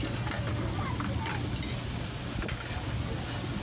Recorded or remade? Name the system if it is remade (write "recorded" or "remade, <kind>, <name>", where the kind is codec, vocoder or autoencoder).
recorded